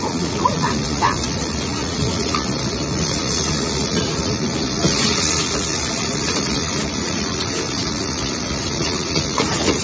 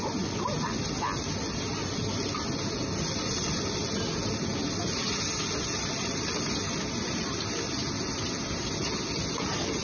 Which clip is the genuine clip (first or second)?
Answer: second